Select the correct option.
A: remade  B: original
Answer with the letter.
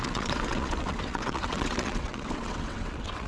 A